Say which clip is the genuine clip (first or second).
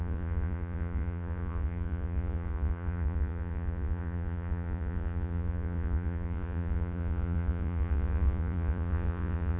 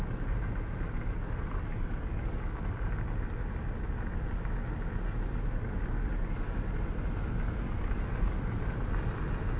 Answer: second